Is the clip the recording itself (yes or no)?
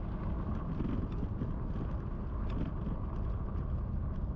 yes